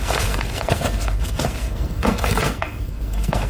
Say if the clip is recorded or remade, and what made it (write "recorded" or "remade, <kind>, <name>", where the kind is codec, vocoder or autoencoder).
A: remade, codec, SNAC